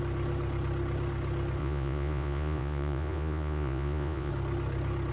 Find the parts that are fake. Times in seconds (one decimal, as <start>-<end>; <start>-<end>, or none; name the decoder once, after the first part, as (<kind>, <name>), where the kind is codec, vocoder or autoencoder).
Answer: 1.6-4.3 (vocoder, Vocos)